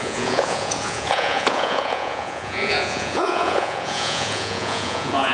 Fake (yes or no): yes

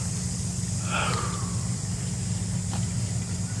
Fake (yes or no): no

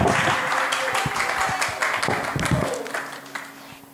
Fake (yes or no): no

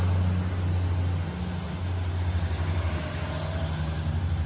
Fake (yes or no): no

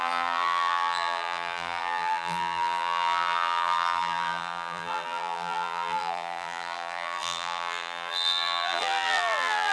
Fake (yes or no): yes